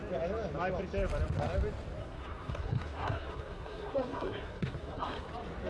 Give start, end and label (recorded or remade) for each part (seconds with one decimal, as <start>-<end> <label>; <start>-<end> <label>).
0.0-2.0 recorded; 2.0-5.3 remade; 5.3-5.7 recorded